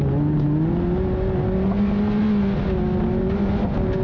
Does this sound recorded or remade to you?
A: recorded